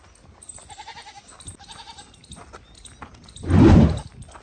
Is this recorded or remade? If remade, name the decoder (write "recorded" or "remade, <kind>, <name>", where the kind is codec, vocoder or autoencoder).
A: recorded